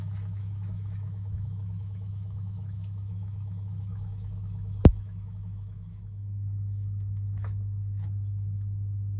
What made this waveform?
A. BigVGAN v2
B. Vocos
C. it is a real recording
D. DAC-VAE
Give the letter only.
D